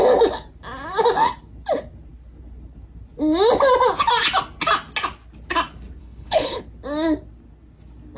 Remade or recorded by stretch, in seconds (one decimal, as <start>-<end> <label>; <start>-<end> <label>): 0.0-6.0 recorded; 6.0-6.6 remade; 6.6-8.2 recorded

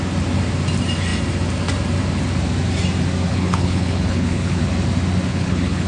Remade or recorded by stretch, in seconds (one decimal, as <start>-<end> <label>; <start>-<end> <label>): 0.0-3.3 recorded; 3.3-4.6 remade; 4.6-5.3 recorded; 5.3-5.9 remade

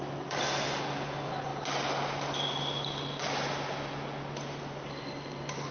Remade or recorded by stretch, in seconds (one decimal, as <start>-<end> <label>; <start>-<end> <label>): 0.0-5.7 recorded

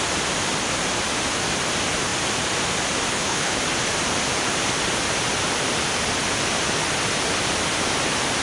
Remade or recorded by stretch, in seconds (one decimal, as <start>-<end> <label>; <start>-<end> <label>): 0.0-3.1 recorded; 3.1-3.6 remade; 3.6-8.4 recorded

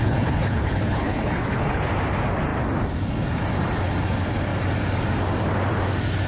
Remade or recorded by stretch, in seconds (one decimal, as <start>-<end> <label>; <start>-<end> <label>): 0.0-1.8 remade; 1.8-6.3 recorded